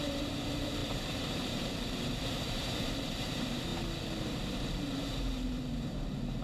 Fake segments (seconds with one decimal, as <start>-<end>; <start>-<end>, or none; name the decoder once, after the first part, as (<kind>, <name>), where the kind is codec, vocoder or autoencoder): 0.0-3.7 (vocoder, BigVGAN v2); 4.2-6.4